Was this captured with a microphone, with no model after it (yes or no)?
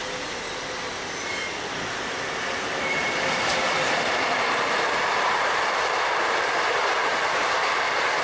no